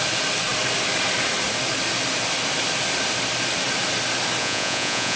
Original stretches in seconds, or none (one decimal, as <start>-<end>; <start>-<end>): 0.0-4.4